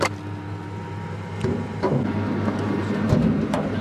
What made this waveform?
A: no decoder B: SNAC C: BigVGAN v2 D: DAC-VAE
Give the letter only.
A